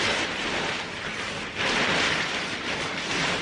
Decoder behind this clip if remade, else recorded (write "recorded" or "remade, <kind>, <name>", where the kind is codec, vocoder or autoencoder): remade, vocoder, BigVGAN v2